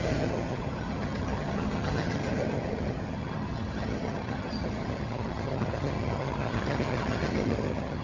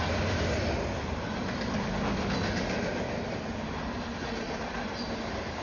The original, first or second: second